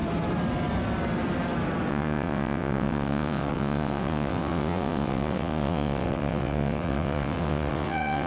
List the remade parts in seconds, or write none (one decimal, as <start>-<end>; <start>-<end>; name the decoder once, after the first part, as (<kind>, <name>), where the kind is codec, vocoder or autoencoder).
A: 1.9-8.3 (vocoder, WaveNeXt)